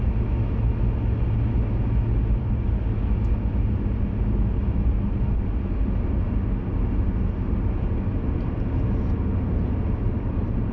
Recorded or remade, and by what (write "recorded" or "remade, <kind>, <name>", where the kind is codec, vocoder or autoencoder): recorded